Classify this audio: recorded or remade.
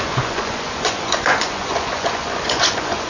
remade